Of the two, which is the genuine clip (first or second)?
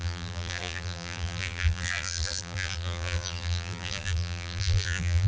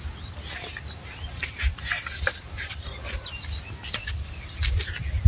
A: second